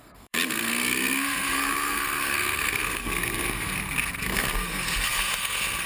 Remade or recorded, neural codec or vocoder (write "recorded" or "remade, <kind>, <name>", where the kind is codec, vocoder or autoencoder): remade, codec, SNAC